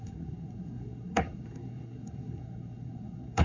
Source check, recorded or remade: remade